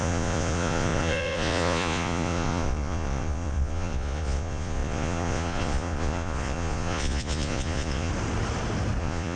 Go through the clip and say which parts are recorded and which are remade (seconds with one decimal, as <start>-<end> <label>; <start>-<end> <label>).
0.0-8.1 remade; 8.1-9.0 recorded; 9.0-9.4 remade